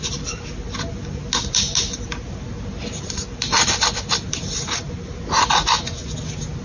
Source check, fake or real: real